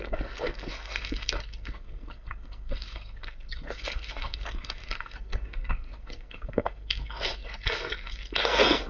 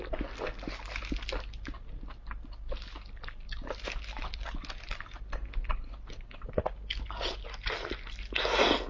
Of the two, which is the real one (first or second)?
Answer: second